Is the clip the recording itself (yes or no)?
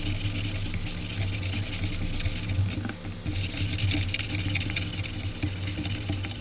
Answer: yes